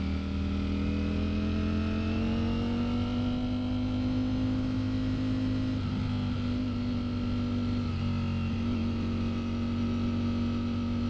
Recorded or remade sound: recorded